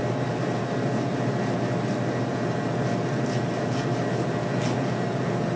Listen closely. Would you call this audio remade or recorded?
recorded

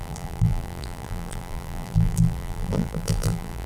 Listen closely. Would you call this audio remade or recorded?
remade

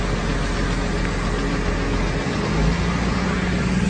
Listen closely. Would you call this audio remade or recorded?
recorded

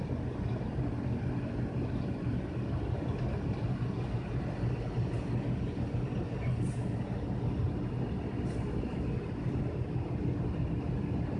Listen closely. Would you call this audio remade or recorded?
recorded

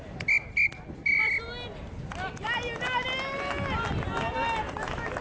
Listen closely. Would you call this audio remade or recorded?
recorded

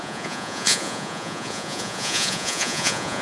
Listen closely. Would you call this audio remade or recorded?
remade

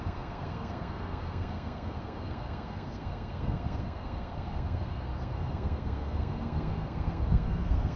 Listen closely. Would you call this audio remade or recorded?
remade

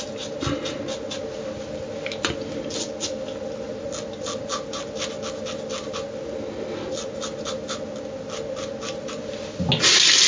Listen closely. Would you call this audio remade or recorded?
recorded